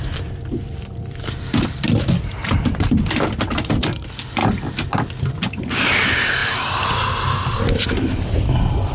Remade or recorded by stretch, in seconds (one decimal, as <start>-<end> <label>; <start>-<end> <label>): 0.0-4.4 remade; 4.4-5.6 recorded; 5.6-6.4 remade; 6.4-7.6 recorded; 7.6-8.9 remade